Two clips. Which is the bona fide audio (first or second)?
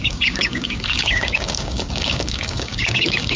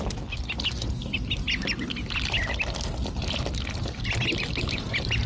second